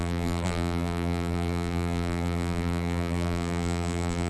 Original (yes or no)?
no